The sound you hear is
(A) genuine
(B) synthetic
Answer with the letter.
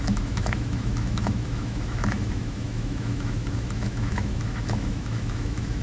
B